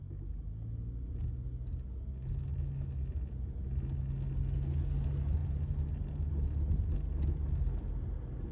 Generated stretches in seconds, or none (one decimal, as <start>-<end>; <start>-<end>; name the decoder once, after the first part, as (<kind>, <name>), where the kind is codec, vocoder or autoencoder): none

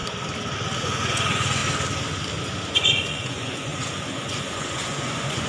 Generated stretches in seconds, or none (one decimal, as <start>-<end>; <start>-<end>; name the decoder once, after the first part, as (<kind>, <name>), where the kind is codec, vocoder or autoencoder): 0.8-1.6 (vocoder, Vocos); 2.7-5.5